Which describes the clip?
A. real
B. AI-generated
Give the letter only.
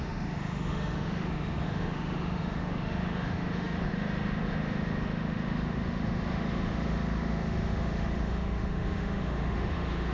B